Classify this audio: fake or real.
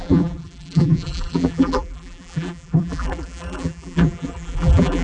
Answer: fake